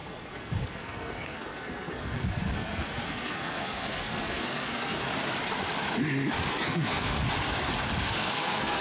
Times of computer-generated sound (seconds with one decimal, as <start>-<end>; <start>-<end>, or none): 0.0-5.1; 6.5-7.2; 8.0-8.8